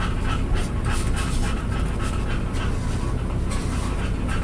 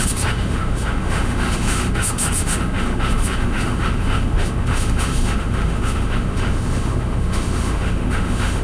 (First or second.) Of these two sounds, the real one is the first